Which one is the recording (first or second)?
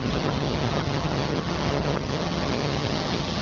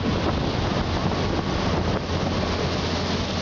second